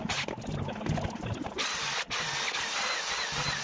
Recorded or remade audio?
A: recorded